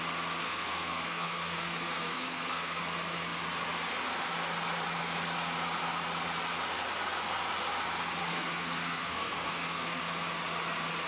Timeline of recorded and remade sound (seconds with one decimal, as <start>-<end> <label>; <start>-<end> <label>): 0.0-0.4 recorded; 0.4-2.8 remade; 2.8-8.2 recorded; 8.2-10.0 remade; 10.0-11.1 recorded